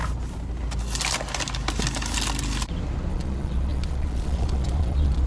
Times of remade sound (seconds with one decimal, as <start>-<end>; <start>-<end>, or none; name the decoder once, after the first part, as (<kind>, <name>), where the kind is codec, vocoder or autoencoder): 3.1-5.3 (vocoder, Vocos)